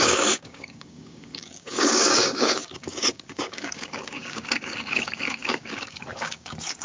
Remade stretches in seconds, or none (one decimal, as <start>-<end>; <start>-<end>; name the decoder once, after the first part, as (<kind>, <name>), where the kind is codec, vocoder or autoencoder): 0.0-6.8 (codec, DAC)